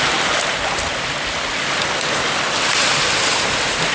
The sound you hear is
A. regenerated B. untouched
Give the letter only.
B